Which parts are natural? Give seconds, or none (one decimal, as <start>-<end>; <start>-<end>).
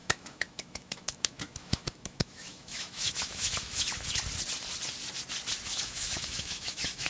4.1-5.7